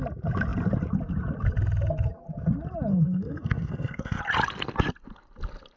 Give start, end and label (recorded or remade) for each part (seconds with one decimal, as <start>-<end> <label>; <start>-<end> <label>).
0.0-2.9 recorded; 2.9-4.2 remade; 4.2-5.8 recorded